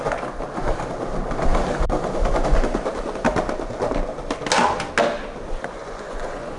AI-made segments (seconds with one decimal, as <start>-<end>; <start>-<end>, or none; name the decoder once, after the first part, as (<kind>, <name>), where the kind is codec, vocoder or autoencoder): 5.8-6.6 (vocoder, Vocos)